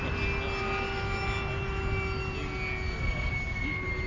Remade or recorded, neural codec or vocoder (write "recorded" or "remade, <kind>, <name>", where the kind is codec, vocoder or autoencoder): recorded